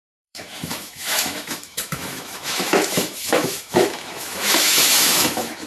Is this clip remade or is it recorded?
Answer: remade